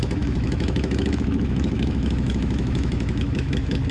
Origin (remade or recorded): remade